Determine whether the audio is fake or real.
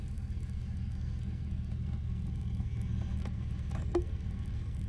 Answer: fake